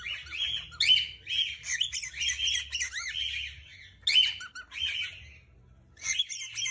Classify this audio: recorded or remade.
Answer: recorded